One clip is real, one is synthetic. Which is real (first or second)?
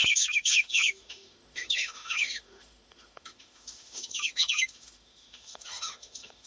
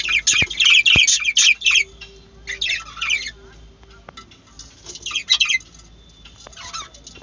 second